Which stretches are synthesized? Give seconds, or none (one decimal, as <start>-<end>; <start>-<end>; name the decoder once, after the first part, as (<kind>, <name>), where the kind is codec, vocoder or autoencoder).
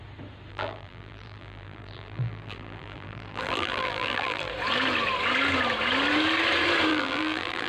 0.5-4.5 (vocoder, BigVGAN v2); 6.9-7.7